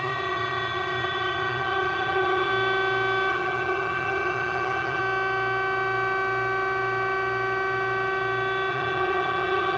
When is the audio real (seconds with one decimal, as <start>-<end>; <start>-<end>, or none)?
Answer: 2.5-3.3; 5.0-8.7